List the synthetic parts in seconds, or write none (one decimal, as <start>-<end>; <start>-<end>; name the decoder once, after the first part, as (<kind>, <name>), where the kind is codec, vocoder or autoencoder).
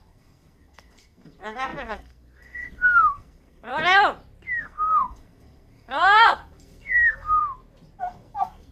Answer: 0.0-3.7 (codec, SNAC); 4.6-7.4; 8.0-8.7